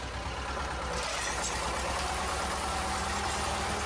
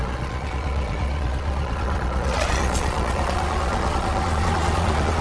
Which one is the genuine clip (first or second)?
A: first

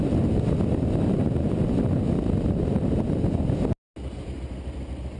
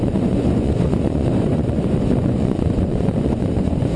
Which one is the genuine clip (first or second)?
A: first